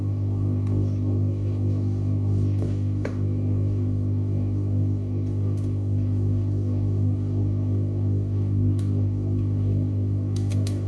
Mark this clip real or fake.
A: fake